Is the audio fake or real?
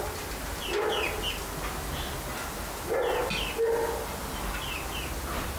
real